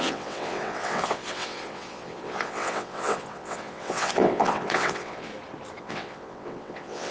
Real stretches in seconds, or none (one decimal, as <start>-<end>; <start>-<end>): 5.3-5.8

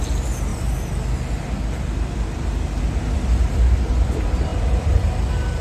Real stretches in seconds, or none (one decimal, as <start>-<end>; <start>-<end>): 0.0-5.6

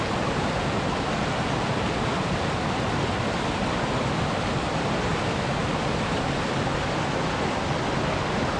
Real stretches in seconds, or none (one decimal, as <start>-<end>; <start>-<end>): 0.0-5.1; 5.7-8.6